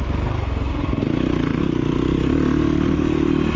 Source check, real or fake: real